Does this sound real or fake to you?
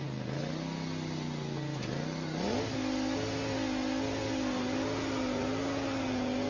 real